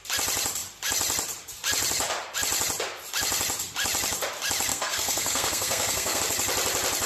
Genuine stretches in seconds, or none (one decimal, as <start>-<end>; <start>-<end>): 0.0-4.7; 6.2-7.1